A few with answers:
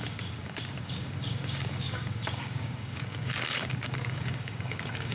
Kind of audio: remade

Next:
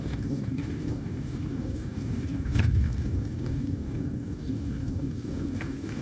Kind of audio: remade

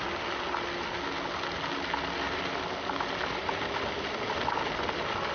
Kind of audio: recorded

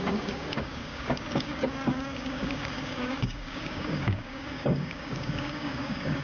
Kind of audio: remade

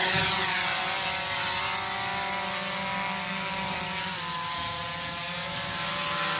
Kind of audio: recorded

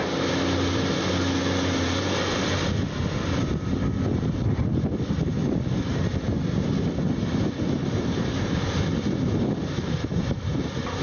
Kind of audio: recorded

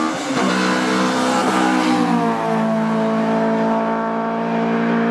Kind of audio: recorded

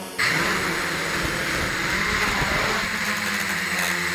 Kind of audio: recorded